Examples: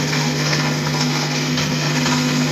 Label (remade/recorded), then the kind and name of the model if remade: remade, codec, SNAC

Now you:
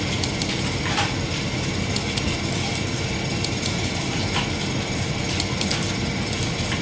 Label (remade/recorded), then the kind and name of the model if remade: recorded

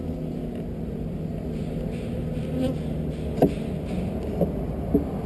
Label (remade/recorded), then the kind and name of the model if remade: recorded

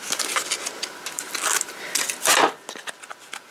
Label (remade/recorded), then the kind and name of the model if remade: recorded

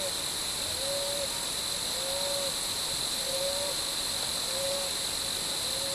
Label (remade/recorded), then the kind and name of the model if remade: recorded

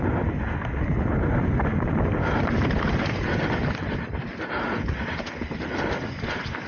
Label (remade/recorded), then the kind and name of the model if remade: recorded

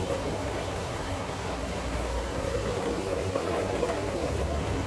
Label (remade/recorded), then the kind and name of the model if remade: remade, codec, SNAC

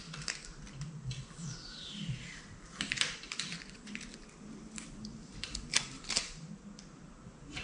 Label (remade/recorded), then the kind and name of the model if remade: recorded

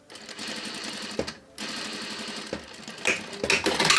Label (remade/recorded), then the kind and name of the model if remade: recorded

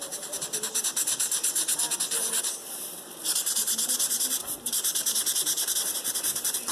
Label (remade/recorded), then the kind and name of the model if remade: remade, vocoder, BigVGAN v2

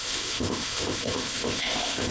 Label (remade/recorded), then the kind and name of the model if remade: remade, codec, ZipCodec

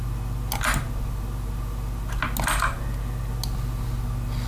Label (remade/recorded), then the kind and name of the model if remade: recorded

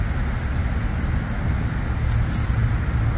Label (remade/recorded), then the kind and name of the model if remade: recorded